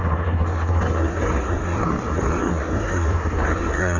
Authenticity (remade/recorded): remade